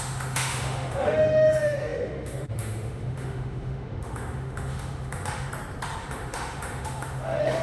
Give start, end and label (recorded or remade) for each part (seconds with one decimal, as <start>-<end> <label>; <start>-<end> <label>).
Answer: 0.0-5.5 remade; 5.5-6.0 recorded; 6.0-7.6 remade